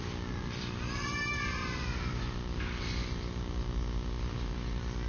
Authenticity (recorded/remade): recorded